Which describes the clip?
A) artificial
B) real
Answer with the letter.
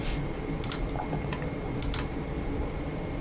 B